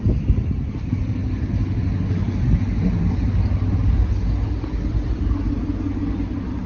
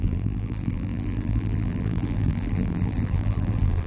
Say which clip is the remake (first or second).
second